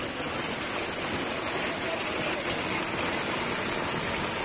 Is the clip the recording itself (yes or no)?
yes